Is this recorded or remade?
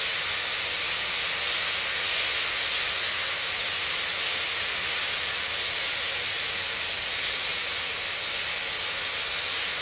recorded